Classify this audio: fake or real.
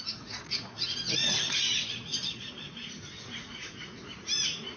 fake